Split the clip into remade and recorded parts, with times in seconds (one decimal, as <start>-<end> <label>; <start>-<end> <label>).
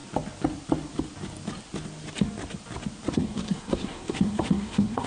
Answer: 0.0-3.1 recorded; 3.1-5.1 remade